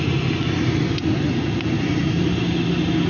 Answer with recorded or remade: recorded